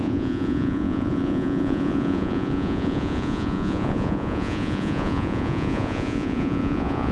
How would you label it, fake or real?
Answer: fake